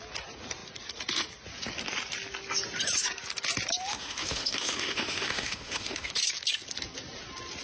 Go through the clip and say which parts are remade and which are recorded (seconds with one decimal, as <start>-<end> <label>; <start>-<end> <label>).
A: 0.0-3.9 recorded; 3.9-6.1 remade; 6.1-7.6 recorded